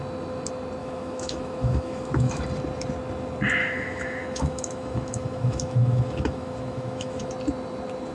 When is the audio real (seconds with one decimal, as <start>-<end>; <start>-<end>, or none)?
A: 0.0-0.8; 2.4-3.6; 7.3-8.1